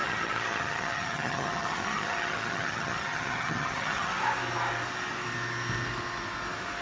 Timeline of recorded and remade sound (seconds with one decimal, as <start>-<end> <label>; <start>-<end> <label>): 0.0-4.1 remade; 4.1-6.8 recorded